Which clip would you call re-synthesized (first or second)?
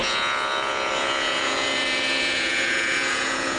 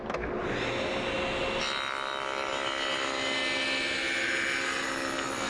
first